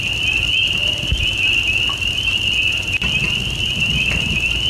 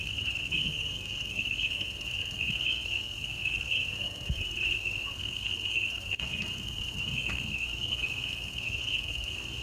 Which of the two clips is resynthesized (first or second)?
second